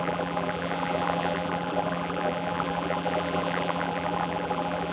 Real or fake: fake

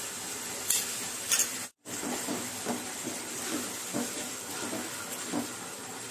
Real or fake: real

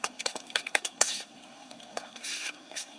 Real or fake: fake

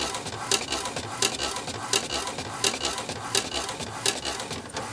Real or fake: real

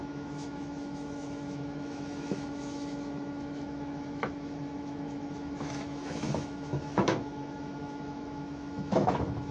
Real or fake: fake